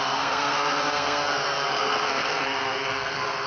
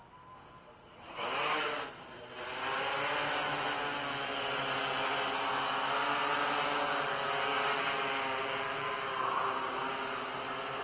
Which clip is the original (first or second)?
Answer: second